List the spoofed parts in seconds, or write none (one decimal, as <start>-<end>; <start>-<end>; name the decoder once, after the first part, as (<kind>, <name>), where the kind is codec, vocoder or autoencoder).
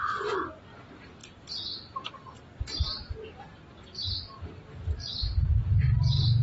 none